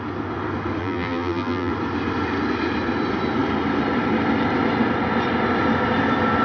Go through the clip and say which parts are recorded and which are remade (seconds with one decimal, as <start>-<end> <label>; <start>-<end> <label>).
0.0-0.8 recorded; 0.8-1.7 remade; 1.7-6.4 recorded